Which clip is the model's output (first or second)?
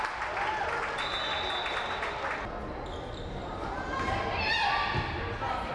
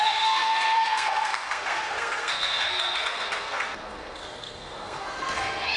second